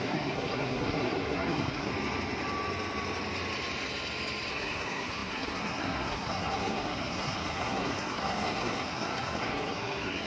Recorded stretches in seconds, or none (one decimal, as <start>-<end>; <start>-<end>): 1.9-4.5